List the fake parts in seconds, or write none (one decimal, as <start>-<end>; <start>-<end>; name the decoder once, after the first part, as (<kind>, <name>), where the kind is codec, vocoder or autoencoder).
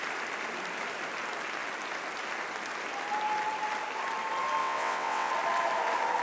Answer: 4.6-5.3 (vocoder, WaveNeXt)